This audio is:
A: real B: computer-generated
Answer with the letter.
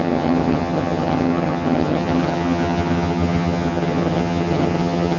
B